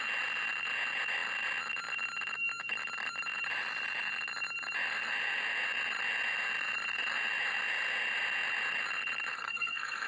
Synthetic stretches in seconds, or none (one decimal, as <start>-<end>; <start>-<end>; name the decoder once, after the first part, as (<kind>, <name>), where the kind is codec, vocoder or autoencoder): 9.3-10.1 (codec, SNAC)